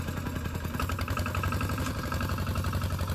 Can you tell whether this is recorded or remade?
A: remade